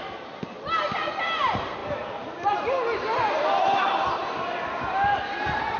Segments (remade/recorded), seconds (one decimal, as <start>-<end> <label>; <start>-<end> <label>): 0.0-5.8 recorded

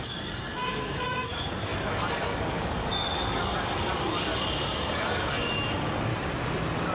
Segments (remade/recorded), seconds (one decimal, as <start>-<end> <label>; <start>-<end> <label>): 0.0-6.1 remade; 6.1-6.9 recorded

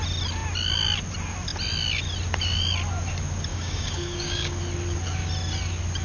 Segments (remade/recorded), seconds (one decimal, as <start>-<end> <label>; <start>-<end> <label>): 0.0-3.5 recorded; 3.5-4.6 remade; 4.6-6.0 recorded

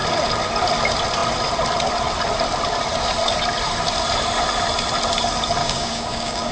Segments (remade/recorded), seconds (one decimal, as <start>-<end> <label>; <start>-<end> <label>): 0.0-5.6 recorded; 5.6-6.5 remade

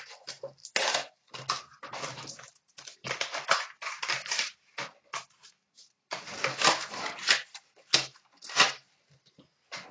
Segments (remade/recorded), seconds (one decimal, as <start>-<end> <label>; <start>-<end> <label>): 0.0-9.9 recorded

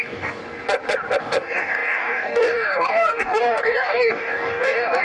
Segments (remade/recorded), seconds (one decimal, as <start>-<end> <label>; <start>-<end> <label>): 0.0-0.4 remade; 0.4-1.2 recorded; 1.2-5.0 remade

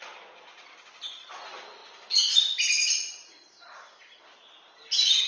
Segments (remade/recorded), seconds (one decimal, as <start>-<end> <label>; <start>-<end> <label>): 0.0-5.3 recorded

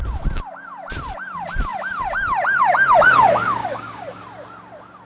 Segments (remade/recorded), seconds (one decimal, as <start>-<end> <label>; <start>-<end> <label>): 0.0-3.6 recorded; 3.6-4.2 remade; 4.2-5.1 recorded